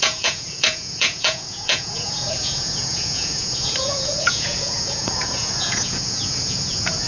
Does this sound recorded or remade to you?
remade